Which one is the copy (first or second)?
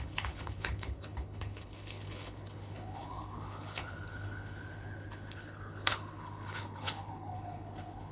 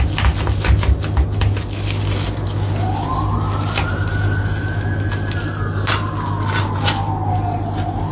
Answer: first